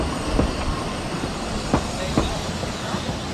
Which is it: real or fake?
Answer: real